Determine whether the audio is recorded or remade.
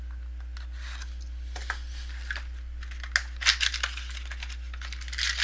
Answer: recorded